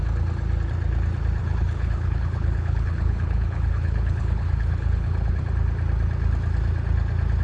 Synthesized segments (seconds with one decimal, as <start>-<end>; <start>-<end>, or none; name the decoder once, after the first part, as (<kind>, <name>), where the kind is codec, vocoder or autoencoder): 1.4-5.4 (codec, HILCodec)